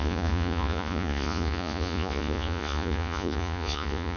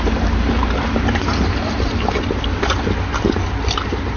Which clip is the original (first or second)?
second